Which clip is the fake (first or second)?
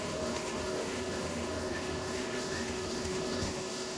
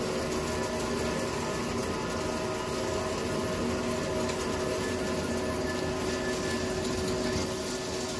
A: first